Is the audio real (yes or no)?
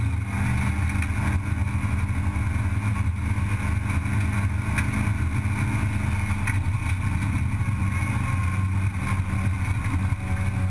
yes